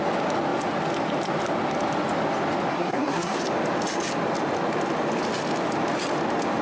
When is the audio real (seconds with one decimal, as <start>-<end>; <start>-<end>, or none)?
0.0-2.7; 3.4-6.6